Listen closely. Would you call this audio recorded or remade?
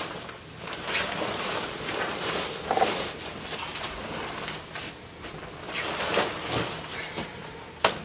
recorded